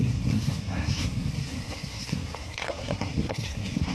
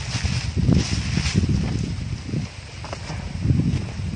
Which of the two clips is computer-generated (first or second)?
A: first